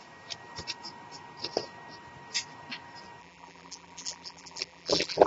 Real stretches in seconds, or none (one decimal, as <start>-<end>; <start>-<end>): 0.0-3.2